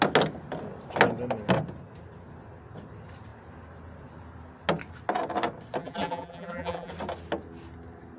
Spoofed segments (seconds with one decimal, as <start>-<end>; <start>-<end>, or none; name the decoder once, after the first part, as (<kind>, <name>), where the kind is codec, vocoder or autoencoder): 5.8-6.9 (vocoder, BigVGAN v2)

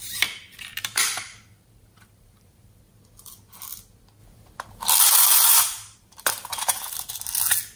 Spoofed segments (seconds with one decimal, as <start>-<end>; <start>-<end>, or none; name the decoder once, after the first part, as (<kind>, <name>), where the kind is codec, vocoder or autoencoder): 0.7-2.8 (vocoder, BigVGAN v2); 5.5-7.1

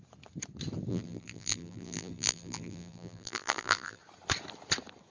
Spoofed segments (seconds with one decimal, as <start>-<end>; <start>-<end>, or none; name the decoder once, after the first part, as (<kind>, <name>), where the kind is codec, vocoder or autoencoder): 0.9-4.0 (vocoder, BigVGAN v2)